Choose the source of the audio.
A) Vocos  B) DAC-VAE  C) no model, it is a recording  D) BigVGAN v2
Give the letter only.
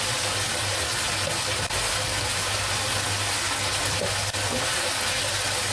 C